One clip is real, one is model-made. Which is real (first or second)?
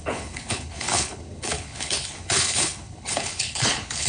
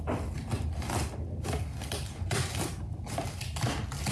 second